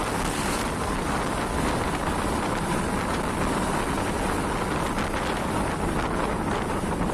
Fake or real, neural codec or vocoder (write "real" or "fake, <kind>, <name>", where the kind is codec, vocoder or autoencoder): real